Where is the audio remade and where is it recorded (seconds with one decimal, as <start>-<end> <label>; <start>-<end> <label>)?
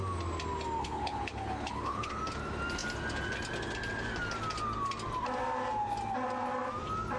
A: 0.0-0.8 recorded; 0.8-2.2 remade; 2.2-7.2 recorded